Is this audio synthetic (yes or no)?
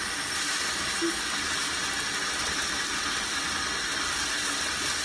no